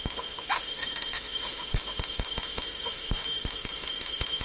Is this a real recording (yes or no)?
no